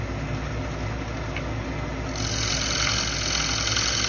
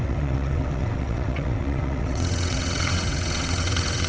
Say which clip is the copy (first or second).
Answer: second